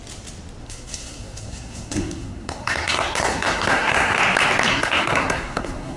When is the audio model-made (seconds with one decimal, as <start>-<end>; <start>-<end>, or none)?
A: 0.6-4.2; 4.7-6.0